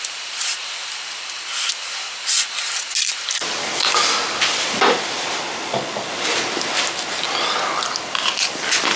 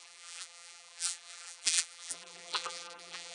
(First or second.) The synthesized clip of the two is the second